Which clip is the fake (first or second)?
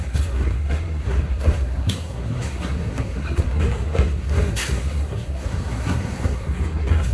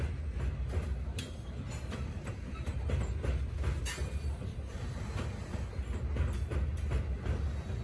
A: first